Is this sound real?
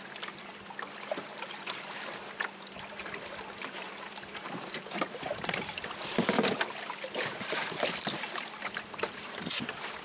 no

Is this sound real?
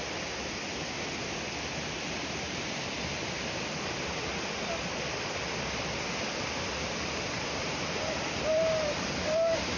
yes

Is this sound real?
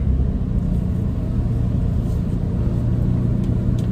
yes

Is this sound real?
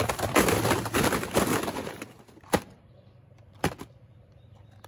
no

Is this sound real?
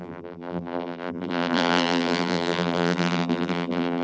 no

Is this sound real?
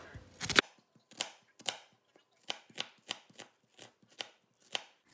yes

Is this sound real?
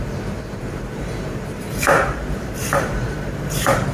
no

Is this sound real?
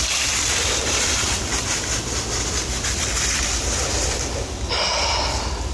yes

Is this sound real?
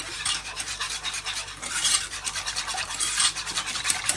no